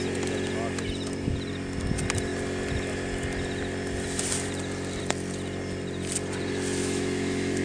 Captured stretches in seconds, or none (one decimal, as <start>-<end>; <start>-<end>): 0.0-6.8